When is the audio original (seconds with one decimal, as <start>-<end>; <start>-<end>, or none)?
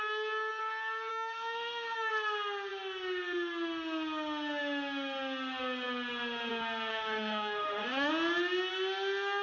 0.0-1.1; 2.1-6.9; 8.1-9.4